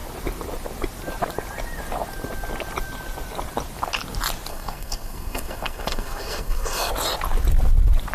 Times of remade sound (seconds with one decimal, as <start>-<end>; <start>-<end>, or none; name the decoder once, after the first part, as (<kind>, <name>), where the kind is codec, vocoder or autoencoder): 4.5-6.9 (codec, SNAC)